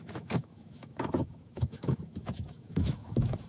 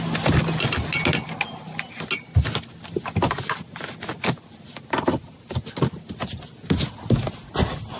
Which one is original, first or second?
second